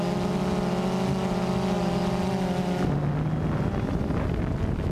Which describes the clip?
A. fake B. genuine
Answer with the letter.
B